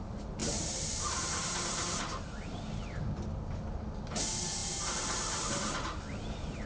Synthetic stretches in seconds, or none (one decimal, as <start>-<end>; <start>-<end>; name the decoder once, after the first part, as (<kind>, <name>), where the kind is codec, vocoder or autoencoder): 0.4-2.2 (vocoder, BigVGAN v2); 4.6-5.4